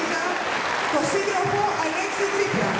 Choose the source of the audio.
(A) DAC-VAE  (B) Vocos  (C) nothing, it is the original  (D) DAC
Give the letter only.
C